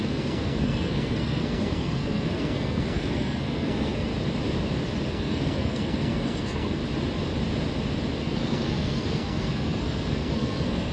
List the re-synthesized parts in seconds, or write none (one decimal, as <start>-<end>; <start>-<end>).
0.0-4.1; 5.1-6.8; 8.2-10.9